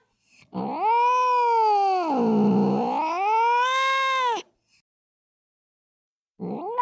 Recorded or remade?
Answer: recorded